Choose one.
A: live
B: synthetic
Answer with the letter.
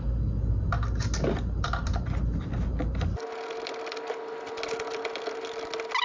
A